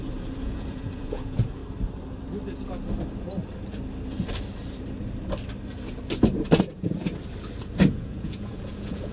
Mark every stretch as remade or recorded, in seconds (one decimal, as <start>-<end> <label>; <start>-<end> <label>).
0.0-1.6 remade; 1.6-6.6 recorded; 6.6-7.1 remade; 7.1-7.6 recorded; 7.6-9.1 remade